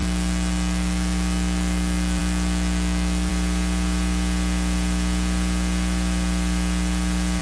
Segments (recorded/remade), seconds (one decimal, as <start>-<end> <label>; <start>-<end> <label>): 0.0-3.3 remade; 3.3-7.4 recorded